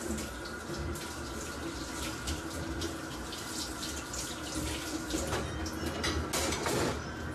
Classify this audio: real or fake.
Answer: real